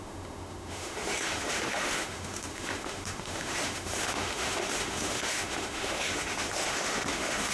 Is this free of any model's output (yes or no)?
no